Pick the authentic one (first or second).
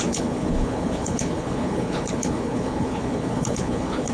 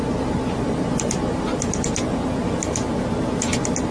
second